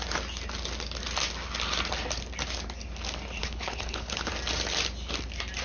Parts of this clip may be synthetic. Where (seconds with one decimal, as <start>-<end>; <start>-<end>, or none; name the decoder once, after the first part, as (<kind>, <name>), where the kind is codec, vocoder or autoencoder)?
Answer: 3.4-4.3 (codec, HILCodec)